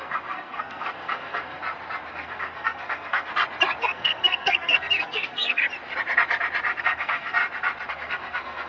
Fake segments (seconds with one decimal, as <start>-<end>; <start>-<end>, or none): 0.0-1.6; 2.1-3.3; 3.8-5.6; 6.8-7.4; 7.9-8.7